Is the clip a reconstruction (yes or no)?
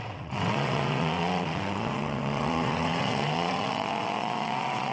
yes